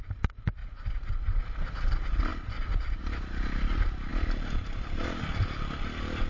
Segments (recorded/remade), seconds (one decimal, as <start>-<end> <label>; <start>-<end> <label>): 0.0-4.1 recorded; 4.1-5.2 remade; 5.2-6.3 recorded